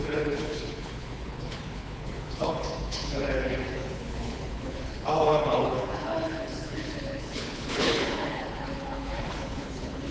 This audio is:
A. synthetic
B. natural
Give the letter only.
A